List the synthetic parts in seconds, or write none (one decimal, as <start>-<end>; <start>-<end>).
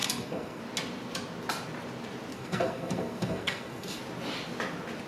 0.0-0.6; 2.3-4.0